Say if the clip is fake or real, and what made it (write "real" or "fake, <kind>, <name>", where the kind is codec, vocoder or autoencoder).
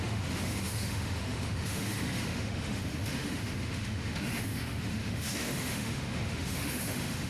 fake, autoencoder, DAC-VAE